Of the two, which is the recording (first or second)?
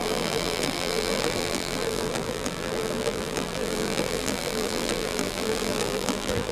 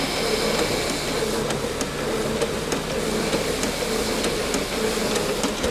second